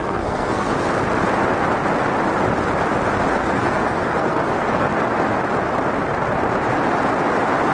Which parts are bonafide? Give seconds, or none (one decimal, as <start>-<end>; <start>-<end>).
0.7-3.3; 4.9-7.7